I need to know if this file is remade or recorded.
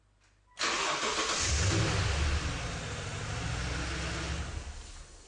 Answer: recorded